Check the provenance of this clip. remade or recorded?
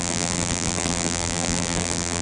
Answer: remade